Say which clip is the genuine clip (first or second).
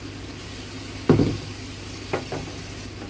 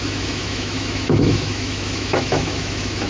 first